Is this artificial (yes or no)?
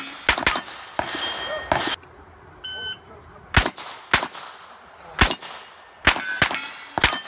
no